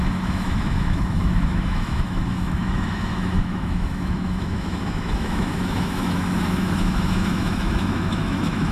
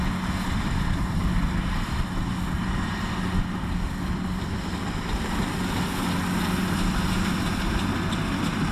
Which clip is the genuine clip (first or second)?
second